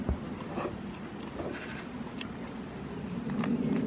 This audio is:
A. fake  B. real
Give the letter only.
B